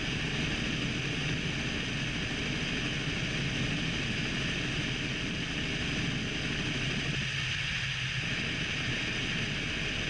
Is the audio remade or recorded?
recorded